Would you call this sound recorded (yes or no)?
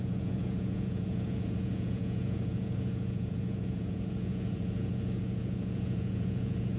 no